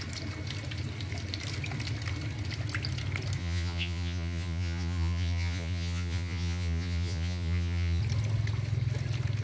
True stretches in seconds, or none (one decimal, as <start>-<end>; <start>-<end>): 0.0-3.4; 8.0-9.4